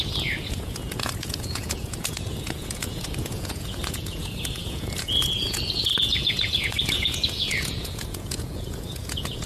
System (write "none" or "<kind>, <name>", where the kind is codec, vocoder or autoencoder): vocoder, Vocos